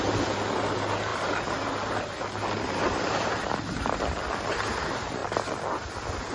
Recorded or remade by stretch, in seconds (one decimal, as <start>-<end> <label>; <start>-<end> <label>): 0.0-6.3 recorded